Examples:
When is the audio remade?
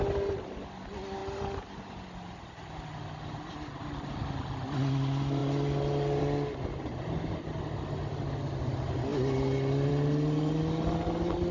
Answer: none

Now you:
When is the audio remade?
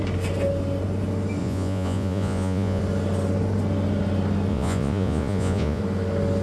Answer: 1.4-2.8 (vocoder, Vocos); 4.5-5.8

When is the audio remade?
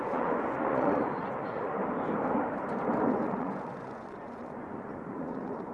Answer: 0.0-1.8 (vocoder, Vocos); 3.1-5.7